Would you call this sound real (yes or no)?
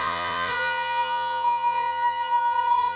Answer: no